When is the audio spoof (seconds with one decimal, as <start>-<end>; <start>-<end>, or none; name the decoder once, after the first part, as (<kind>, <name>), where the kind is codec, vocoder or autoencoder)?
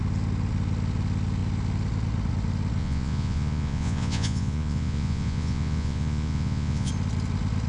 2.8-6.9 (vocoder, Vocos)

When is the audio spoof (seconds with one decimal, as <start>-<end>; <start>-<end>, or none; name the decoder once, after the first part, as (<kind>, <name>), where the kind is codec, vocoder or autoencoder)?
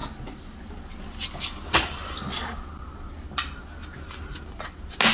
none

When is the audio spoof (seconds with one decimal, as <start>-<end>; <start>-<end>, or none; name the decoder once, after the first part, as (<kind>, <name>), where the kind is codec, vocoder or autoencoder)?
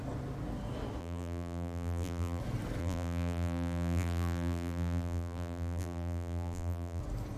1.0-2.4 (vocoder, BigVGAN v2); 2.8-7.0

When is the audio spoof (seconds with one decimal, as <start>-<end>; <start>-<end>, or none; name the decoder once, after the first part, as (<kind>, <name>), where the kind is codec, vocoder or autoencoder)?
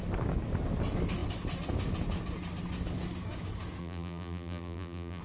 3.8-5.2 (vocoder, BigVGAN v2)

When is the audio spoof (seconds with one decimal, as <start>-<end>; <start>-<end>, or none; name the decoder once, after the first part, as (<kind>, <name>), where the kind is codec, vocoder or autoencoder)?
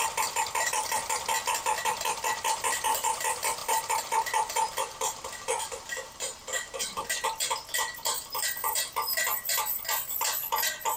3.6-6.8 (vocoder, BigVGAN v2)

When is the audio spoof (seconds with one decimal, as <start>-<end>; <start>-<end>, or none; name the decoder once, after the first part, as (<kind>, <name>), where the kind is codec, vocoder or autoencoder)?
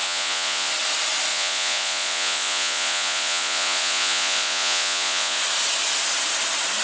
0.0-0.7 (vocoder, Vocos); 1.3-5.4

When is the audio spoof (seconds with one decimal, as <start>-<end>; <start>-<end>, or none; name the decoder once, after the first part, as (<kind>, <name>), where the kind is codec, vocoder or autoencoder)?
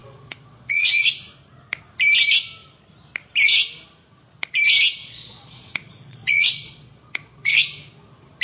0.0-1.1 (vocoder, Vocos); 5.0-7.5